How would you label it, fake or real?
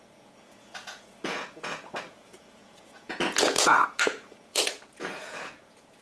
fake